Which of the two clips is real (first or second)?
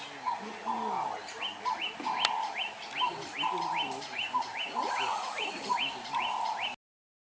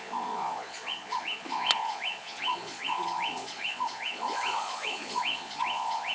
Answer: first